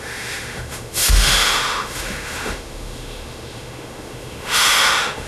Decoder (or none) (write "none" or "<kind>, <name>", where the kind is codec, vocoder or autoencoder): autoencoder, DAC-VAE